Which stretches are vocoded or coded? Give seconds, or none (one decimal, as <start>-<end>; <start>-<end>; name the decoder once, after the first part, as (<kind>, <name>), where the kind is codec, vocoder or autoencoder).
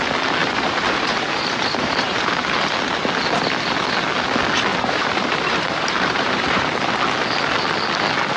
0.4-2.3 (vocoder, BigVGAN v2); 4.7-7.0